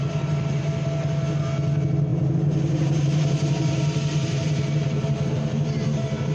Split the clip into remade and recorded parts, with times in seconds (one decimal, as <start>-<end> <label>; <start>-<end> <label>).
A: 0.0-2.1 recorded; 2.1-6.3 remade